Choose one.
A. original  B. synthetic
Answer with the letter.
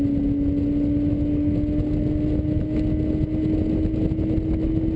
A